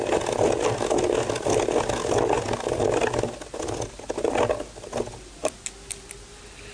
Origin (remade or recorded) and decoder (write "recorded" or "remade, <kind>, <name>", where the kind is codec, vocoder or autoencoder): recorded